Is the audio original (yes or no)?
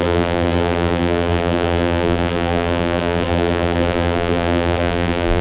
no